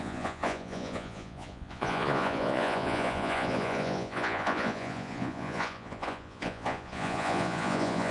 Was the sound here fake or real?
fake